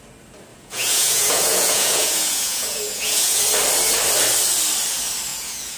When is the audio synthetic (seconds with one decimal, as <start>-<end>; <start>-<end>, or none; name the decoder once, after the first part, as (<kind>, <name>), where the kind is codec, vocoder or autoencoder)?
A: 0.5-3.4 (vocoder, Vocos); 5.3-5.8